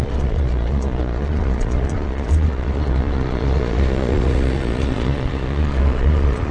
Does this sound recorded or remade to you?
remade